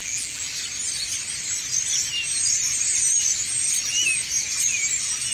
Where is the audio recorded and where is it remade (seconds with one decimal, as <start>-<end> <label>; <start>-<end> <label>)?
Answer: 0.0-0.5 remade; 0.5-5.3 recorded